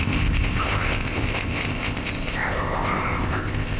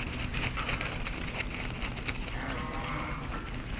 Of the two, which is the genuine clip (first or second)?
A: second